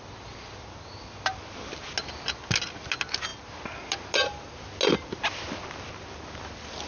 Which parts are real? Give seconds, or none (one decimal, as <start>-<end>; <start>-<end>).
0.0-6.9